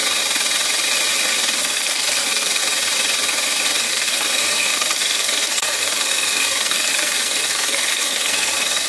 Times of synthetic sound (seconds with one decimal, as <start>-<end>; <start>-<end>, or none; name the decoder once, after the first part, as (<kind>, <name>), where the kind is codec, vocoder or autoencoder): 1.6-2.6 (codec, SNAC); 3.8-8.9

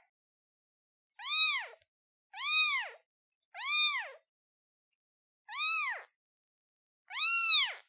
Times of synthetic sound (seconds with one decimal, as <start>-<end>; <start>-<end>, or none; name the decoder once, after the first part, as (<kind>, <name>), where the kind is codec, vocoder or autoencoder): none

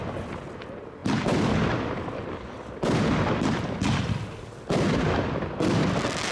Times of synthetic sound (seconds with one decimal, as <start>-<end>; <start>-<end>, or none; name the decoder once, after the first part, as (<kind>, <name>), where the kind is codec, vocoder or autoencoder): none

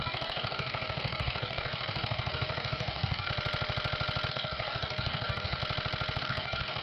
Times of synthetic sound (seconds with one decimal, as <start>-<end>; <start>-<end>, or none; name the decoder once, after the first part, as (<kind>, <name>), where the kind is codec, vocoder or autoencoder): 0.0-3.3 (codec, DAC); 4.3-5.6; 6.2-6.8

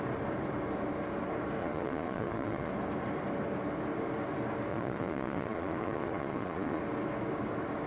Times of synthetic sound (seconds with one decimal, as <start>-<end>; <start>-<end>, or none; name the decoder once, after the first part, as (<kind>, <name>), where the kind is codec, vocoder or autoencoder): 1.6-2.7 (vocoder, Vocos); 4.7-6.8

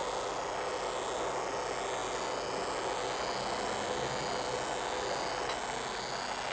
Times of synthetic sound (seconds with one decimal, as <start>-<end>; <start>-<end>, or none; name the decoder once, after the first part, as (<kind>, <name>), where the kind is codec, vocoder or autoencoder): none